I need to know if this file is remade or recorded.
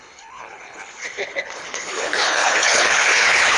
remade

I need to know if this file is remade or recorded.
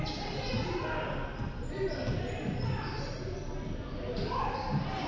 recorded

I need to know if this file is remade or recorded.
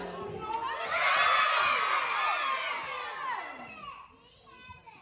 recorded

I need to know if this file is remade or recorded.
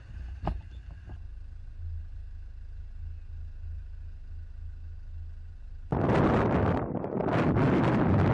recorded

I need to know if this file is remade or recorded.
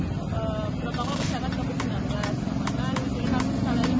recorded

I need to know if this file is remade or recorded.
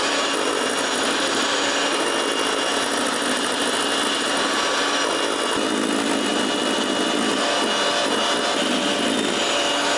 recorded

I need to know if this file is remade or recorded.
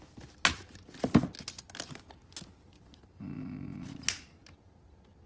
recorded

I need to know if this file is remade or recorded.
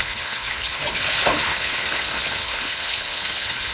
remade